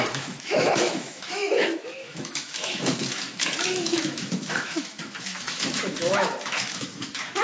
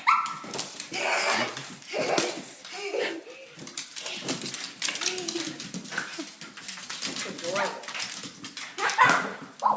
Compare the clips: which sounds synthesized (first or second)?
first